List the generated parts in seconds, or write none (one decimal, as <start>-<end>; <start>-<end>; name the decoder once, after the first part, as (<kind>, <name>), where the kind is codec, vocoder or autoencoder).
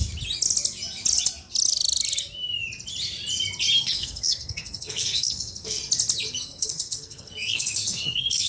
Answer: 3.8-5.8 (codec, SNAC); 6.4-8.5